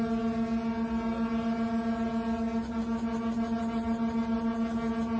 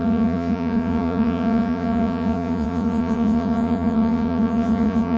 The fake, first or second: second